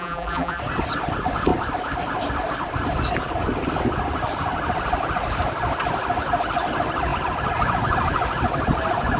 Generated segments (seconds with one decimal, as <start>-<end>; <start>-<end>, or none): 0.0-0.6